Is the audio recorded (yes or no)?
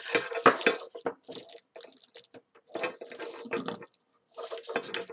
yes